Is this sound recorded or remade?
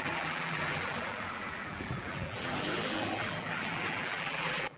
remade